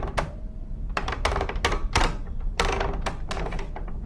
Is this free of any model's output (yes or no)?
no